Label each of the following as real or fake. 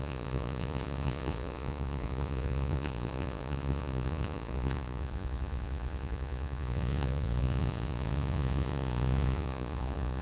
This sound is fake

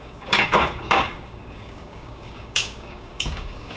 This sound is fake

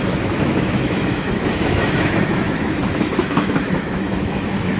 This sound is fake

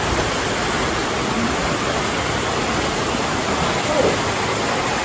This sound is real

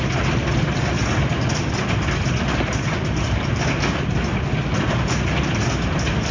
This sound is real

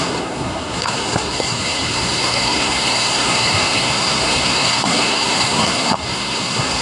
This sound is fake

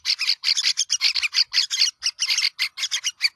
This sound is real